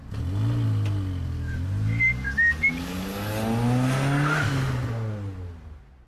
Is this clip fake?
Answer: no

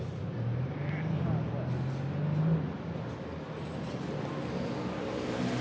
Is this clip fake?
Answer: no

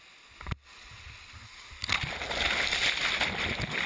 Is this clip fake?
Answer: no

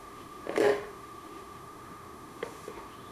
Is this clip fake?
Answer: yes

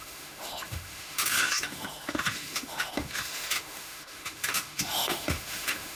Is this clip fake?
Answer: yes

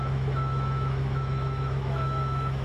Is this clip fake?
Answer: yes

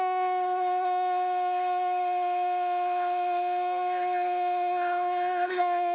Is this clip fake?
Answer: yes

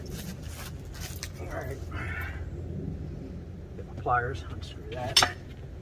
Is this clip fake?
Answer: no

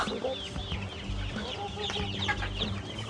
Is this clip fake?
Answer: no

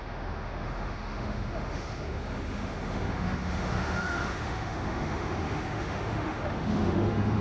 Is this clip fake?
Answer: yes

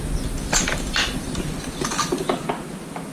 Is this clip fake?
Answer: no